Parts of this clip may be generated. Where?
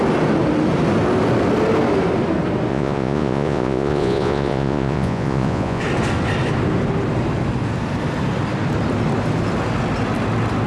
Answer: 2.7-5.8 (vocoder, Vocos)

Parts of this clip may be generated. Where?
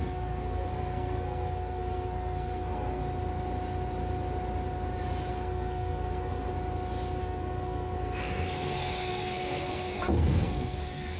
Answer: 0.0-3.0 (codec, SNAC); 5.3-6.5; 7.2-11.2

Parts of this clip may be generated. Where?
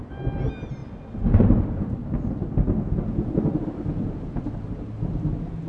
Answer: none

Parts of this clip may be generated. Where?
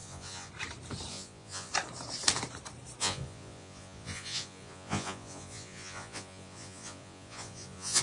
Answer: 0.0-0.5 (vocoder, Vocos); 1.1-1.7; 3.0-8.0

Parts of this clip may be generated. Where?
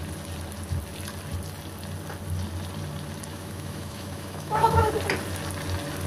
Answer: 3.3-4.9 (autoencoder, DAC-VAE)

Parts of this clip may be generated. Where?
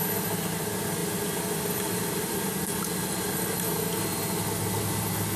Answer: 1.0-2.8 (vocoder, BigVGAN v2)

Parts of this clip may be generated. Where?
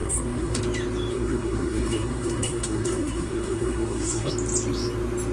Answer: 0.0-0.6 (codec, SNAC); 1.1-4.3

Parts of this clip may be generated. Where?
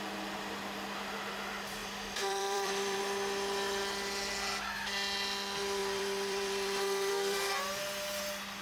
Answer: 1.8-3.0 (vocoder, BigVGAN v2); 5.8-7.1